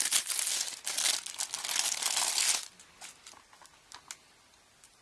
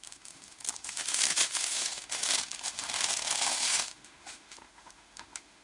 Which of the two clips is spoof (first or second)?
second